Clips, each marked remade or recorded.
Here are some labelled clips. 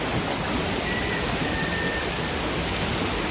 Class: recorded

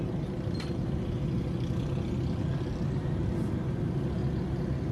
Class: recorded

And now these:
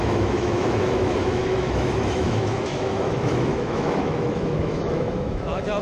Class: remade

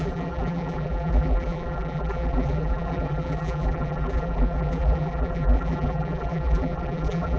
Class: remade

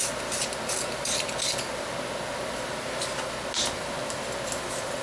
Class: recorded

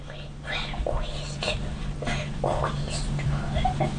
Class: recorded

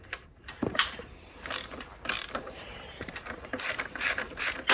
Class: remade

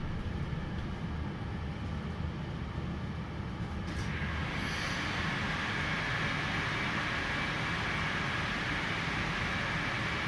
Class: recorded